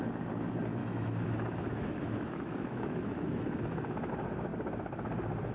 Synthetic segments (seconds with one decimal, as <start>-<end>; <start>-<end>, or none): 0.8-4.1